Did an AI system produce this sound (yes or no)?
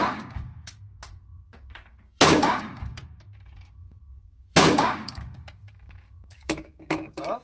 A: yes